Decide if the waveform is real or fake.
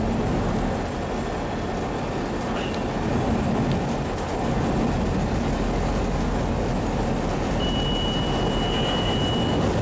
real